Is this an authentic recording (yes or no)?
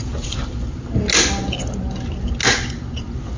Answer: yes